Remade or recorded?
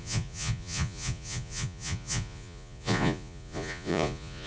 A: remade